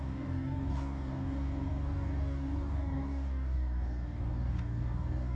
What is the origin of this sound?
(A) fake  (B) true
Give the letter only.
A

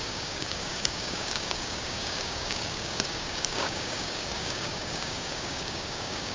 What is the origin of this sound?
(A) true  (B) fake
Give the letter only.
B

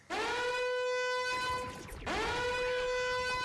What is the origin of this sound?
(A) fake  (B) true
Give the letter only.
B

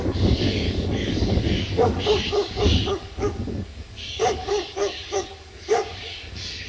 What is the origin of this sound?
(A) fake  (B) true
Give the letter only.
A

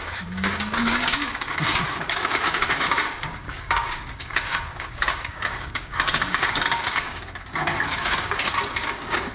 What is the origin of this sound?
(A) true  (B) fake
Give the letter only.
B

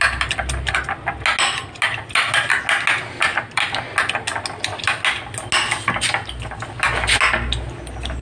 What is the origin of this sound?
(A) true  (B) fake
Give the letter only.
A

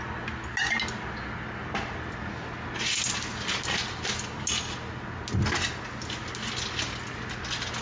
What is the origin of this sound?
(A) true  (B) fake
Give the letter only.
A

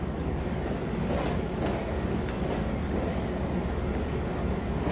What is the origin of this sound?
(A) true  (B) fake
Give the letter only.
B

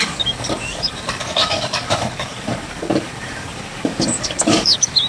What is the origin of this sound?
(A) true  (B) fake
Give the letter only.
B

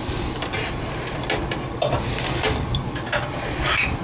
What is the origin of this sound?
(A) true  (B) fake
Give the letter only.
A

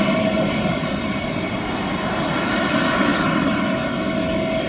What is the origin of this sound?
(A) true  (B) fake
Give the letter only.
A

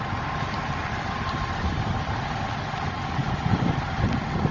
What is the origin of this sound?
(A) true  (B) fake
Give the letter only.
A